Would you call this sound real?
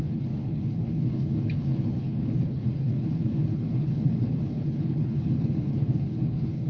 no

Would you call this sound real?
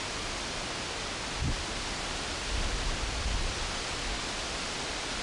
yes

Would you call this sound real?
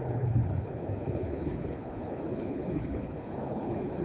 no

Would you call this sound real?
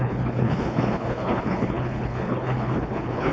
no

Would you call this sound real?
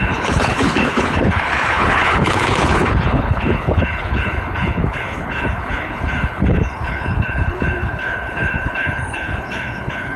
no